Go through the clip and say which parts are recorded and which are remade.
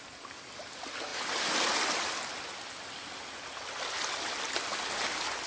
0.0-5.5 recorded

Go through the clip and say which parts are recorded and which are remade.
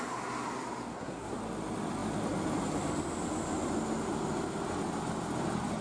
0.0-0.9 recorded; 0.9-1.4 remade; 1.4-5.8 recorded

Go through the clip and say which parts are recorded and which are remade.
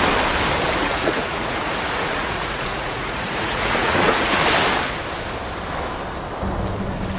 0.0-0.8 recorded; 0.8-4.4 remade; 4.4-7.2 recorded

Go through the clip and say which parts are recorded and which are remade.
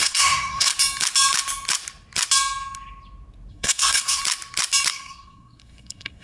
0.0-0.7 remade; 0.7-3.5 recorded; 3.5-4.2 remade; 4.2-4.9 recorded; 4.9-6.2 remade